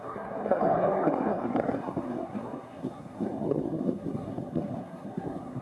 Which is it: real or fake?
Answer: fake